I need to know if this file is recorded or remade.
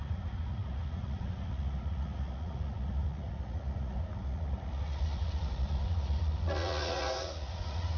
remade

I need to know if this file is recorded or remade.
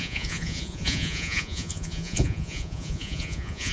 remade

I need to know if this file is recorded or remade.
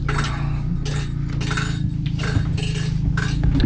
recorded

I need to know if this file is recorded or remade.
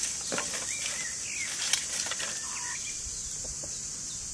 recorded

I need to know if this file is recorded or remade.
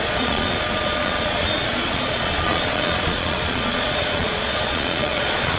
remade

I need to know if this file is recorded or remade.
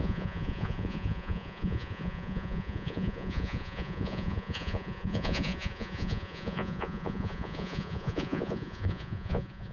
remade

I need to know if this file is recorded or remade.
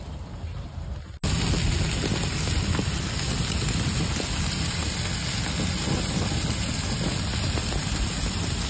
recorded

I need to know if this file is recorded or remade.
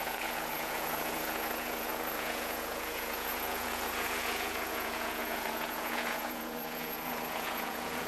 remade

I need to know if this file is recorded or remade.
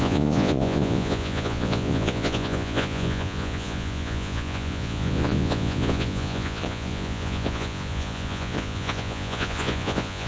remade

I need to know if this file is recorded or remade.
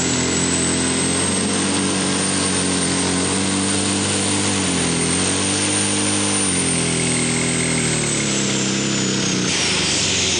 recorded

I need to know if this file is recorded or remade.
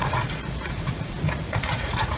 remade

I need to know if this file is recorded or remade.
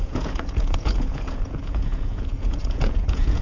remade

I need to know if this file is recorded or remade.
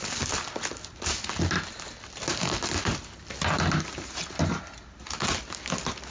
recorded